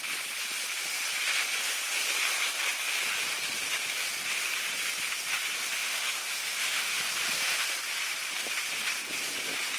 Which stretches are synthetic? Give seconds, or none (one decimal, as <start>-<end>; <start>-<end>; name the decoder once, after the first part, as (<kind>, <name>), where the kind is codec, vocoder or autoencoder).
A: 5.8-7.0 (autoencoder, DAC-VAE)